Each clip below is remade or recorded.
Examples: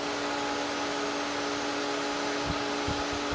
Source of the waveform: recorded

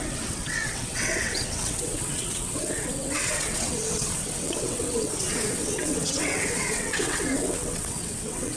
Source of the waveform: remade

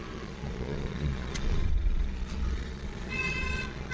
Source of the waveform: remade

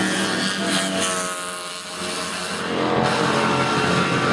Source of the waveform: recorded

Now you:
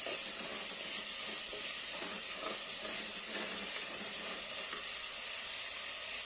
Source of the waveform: recorded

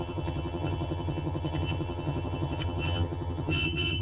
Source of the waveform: remade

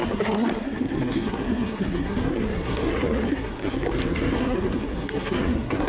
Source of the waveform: remade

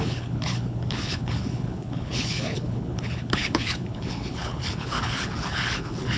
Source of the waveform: remade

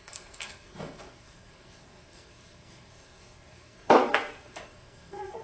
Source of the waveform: remade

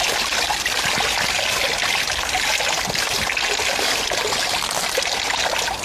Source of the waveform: recorded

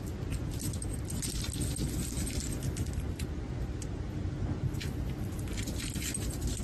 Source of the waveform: recorded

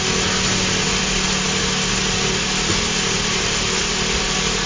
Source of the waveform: recorded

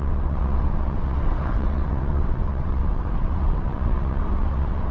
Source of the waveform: remade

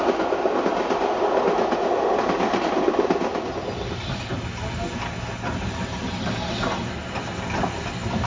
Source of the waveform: recorded